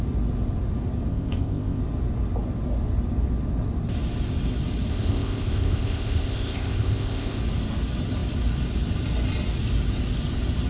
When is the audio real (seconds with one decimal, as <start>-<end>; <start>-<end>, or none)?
0.0-1.1; 1.8-4.9; 7.4-10.7